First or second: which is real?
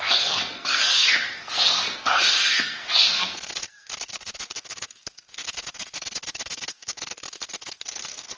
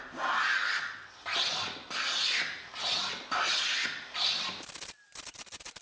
second